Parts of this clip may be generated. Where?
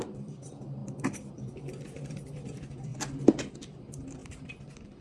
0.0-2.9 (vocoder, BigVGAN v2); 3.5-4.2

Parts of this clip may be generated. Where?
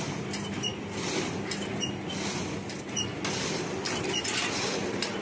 none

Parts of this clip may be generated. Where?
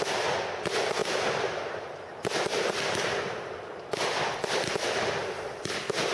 none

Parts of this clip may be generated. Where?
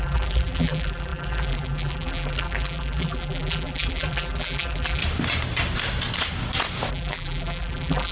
0.0-5.0 (vocoder, BigVGAN v2); 6.9-8.1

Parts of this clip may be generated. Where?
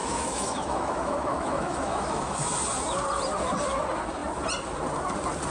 0.0-2.4 (autoencoder, DAC-VAE)